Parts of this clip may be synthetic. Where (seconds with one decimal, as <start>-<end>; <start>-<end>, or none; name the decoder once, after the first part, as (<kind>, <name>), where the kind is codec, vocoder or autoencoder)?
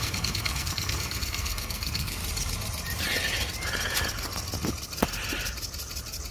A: 0.0-2.2 (codec, SNAC)